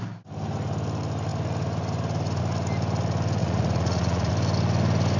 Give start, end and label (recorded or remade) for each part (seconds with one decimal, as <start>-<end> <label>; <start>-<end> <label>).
0.0-3.4 recorded; 3.4-4.3 remade; 4.3-5.2 recorded